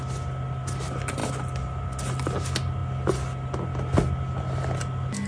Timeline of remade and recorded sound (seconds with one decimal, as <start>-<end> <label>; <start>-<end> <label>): 0.0-5.3 recorded